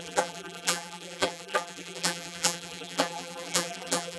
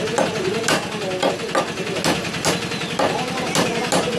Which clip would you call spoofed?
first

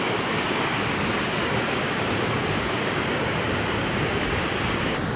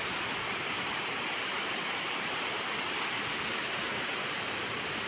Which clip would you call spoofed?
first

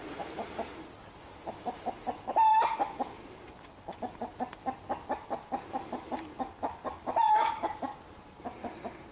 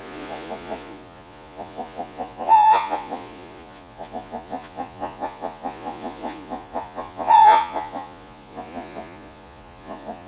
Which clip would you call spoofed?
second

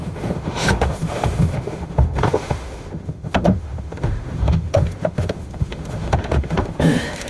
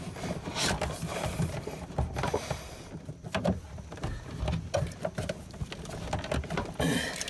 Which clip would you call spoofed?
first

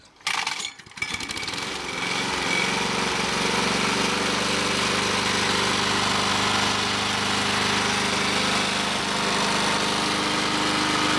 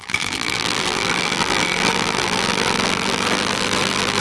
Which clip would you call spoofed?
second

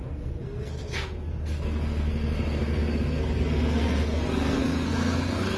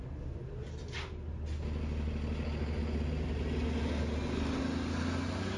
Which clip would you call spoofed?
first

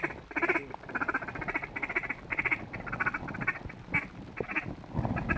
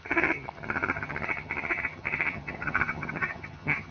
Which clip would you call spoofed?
second